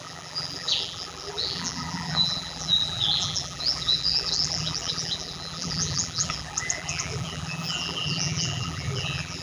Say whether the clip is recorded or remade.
remade